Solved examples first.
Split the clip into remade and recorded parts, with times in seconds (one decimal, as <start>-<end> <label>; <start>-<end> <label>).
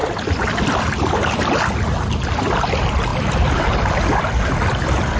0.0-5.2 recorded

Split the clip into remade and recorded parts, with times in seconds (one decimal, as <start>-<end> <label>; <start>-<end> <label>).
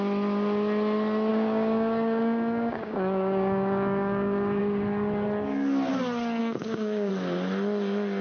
0.0-1.3 recorded; 1.3-4.6 remade; 4.6-6.4 recorded; 6.4-7.1 remade; 7.1-8.2 recorded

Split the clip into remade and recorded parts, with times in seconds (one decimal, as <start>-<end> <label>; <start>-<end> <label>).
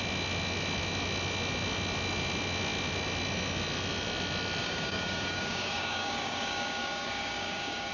0.0-4.6 recorded; 4.6-7.9 remade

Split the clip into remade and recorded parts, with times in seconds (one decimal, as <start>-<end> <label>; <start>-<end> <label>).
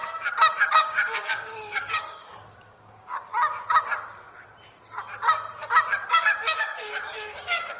0.0-0.7 recorded; 0.7-3.3 remade; 3.3-6.1 recorded; 6.1-7.8 remade